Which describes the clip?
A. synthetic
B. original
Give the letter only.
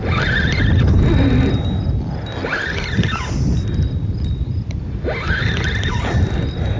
B